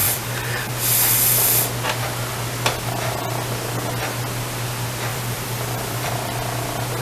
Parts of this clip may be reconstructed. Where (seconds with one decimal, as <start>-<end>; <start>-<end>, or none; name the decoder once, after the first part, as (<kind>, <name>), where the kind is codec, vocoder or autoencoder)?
0.0-0.7 (vocoder, BigVGAN v2); 5.1-6.1